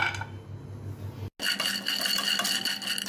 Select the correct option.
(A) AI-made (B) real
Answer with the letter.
B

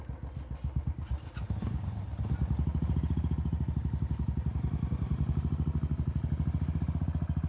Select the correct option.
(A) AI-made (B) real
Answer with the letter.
B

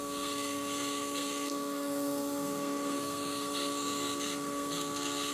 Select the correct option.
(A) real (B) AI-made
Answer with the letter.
B